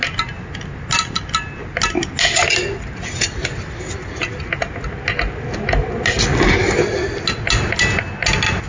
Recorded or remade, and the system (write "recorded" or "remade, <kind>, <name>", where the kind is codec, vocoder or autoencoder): recorded